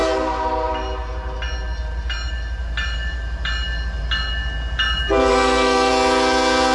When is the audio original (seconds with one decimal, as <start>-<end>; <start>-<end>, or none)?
0.0-5.3; 5.9-6.7